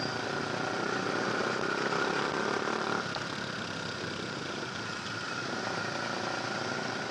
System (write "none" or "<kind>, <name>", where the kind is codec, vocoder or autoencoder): none